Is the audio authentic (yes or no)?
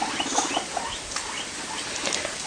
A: no